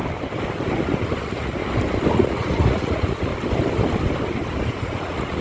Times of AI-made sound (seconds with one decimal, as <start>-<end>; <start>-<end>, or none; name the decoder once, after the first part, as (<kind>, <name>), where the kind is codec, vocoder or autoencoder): 1.2-1.6 (vocoder, Vocos); 2.1-3.3; 4.7-5.4